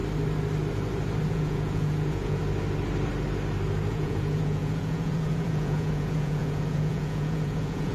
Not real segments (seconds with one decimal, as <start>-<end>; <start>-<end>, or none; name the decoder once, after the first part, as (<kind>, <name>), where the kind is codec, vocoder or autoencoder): 1.3-2.4 (vocoder, Vocos); 3.9-7.9

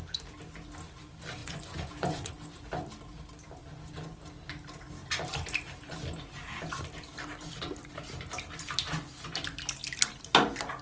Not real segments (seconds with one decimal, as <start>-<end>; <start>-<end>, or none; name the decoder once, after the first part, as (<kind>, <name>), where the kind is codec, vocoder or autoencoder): 1.4-2.3 (vocoder, Vocos)